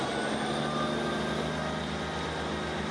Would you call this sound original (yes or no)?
yes